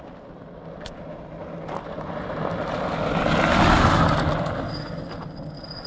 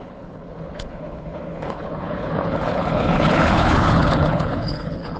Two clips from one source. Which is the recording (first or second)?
first